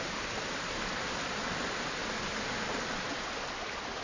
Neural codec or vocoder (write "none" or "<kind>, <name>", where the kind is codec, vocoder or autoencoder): none